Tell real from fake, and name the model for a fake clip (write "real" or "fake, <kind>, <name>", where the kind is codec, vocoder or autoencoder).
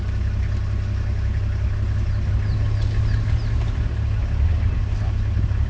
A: real